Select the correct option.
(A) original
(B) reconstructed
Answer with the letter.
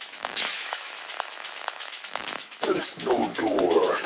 B